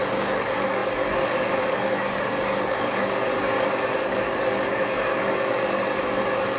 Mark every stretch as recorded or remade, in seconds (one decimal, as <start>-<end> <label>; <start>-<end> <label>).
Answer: 0.0-6.6 remade